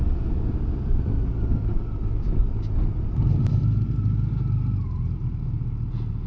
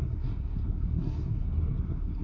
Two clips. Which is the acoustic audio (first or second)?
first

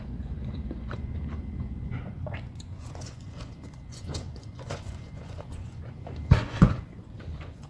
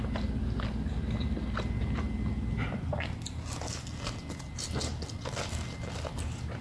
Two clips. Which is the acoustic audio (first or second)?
second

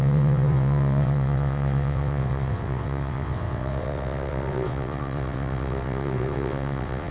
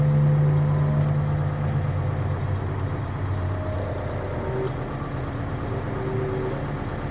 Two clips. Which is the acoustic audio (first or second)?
second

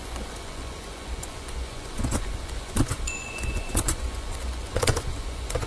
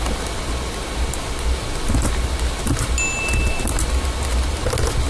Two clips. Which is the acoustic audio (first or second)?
second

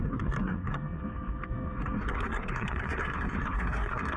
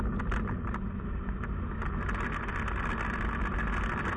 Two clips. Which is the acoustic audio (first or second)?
second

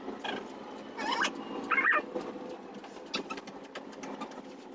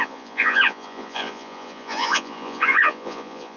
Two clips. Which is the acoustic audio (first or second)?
first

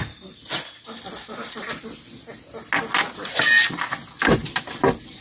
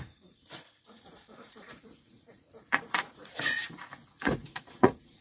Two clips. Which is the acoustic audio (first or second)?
first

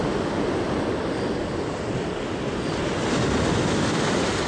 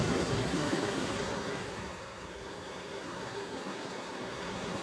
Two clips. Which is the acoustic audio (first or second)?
first